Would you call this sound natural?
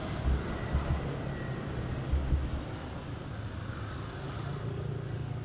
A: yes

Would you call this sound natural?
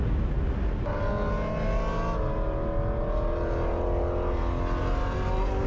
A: yes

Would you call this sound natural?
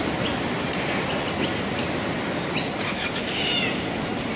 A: yes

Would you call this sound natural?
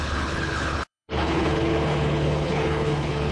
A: no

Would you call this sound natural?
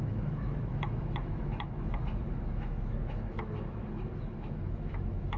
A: no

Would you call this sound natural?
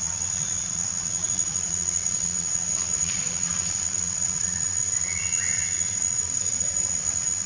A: no